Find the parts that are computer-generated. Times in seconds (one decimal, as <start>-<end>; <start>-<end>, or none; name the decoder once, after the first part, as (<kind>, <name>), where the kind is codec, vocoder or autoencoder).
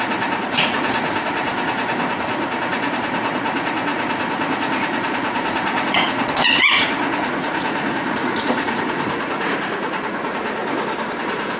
0.0-10.6 (vocoder, Vocos); 11.2-11.6